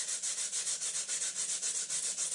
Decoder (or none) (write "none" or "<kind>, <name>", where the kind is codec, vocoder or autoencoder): none